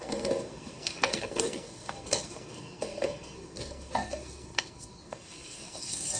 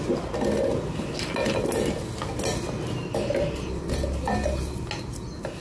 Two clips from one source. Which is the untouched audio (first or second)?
second